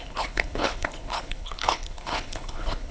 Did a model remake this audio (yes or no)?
yes